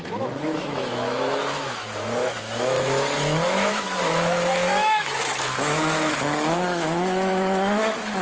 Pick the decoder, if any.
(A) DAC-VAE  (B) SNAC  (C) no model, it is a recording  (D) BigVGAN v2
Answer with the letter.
A